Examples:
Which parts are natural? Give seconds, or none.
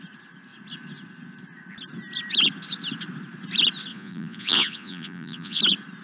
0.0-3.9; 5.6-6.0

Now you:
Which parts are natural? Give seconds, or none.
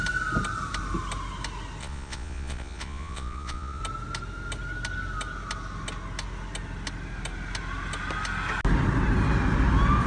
0.0-1.8; 3.8-10.1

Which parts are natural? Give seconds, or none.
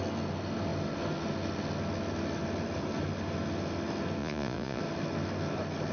0.0-4.2; 4.8-5.9